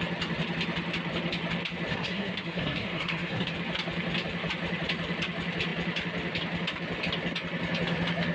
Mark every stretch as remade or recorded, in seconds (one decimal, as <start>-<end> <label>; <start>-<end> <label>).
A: 0.0-1.9 recorded; 1.9-3.5 remade; 3.5-8.3 recorded